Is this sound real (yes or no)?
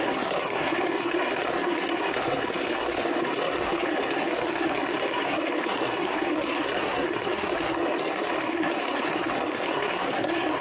no